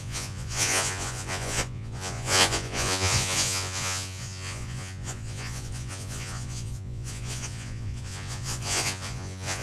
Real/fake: fake